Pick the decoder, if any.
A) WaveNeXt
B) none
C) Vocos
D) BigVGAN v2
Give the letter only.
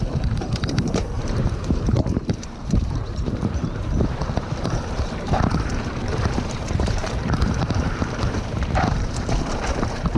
D